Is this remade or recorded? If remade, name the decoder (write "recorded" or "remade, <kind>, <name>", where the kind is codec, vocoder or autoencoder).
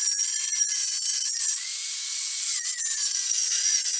remade, vocoder, Vocos